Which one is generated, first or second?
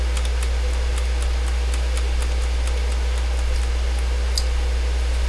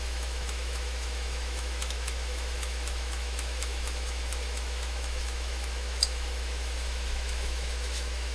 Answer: second